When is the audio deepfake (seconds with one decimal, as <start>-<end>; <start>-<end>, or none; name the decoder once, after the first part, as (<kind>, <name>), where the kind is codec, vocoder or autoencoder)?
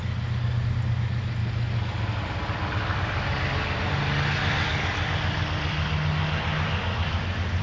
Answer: none